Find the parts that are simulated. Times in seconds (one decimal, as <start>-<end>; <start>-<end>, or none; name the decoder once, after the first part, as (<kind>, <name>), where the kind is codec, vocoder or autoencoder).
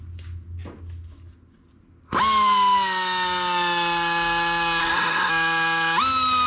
4.8-5.3 (codec, SNAC)